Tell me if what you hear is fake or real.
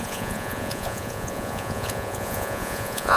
fake